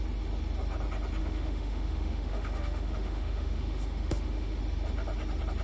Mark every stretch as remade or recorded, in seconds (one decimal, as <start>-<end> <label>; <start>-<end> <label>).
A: 0.0-1.2 recorded; 1.2-4.6 remade; 4.6-5.6 recorded